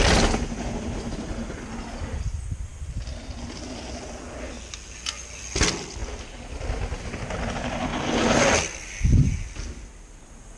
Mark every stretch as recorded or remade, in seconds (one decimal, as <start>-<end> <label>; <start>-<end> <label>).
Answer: 0.0-10.6 recorded